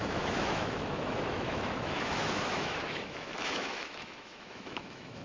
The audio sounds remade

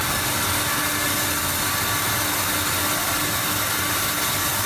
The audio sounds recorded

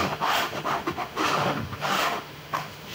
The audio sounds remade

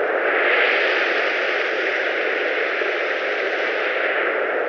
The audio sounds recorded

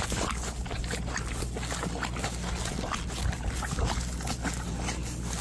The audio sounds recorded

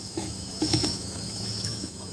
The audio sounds remade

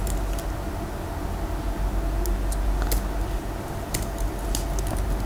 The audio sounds recorded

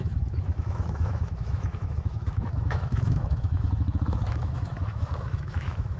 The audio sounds remade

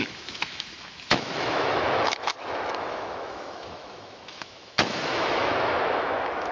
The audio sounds remade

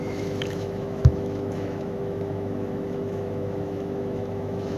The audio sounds remade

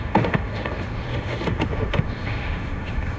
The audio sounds remade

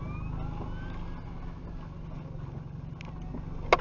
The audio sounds recorded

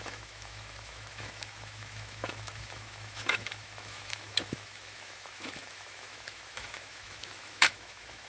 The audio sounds remade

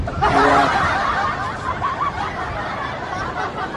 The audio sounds recorded